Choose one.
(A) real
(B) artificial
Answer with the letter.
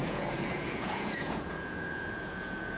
B